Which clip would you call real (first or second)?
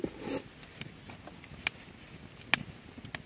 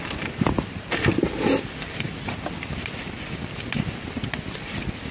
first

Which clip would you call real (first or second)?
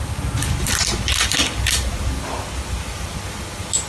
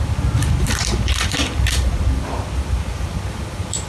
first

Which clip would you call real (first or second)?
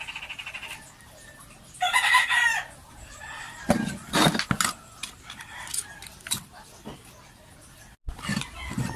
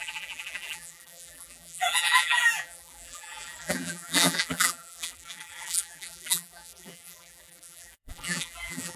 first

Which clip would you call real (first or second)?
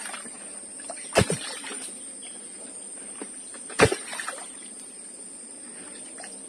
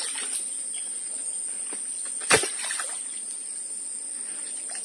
second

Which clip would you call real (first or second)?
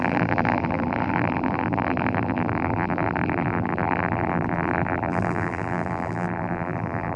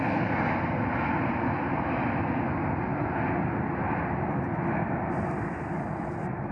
second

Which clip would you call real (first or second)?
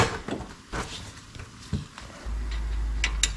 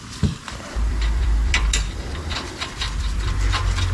first